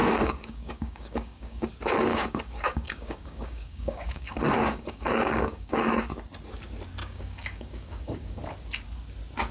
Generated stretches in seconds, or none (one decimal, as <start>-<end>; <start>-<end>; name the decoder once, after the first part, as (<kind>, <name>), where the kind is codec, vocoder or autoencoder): 0.0-1.7 (codec, DAC); 2.1-6.0; 7.0-8.4